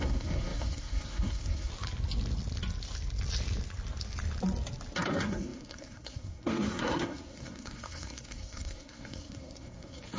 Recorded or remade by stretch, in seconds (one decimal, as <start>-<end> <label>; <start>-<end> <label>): 0.0-1.7 remade; 1.7-5.0 recorded; 5.0-10.2 remade